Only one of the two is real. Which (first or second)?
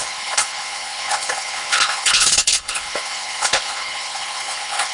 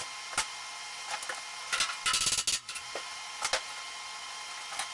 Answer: second